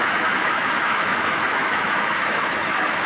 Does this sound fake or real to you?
fake